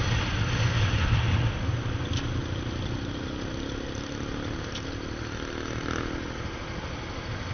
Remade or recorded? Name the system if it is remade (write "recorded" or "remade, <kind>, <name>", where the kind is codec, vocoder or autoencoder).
recorded